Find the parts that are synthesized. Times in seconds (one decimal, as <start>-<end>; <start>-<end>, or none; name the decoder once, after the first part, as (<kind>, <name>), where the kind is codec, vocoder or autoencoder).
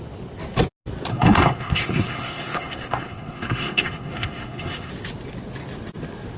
1.1-4.9 (codec, SNAC)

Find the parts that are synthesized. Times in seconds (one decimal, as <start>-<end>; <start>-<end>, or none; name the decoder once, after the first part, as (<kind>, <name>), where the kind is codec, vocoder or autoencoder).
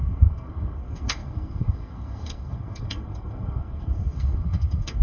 0.0-5.0 (codec, SNAC)